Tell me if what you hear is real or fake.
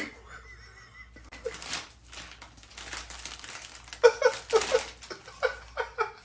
real